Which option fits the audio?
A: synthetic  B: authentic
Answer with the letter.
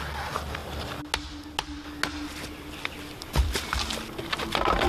B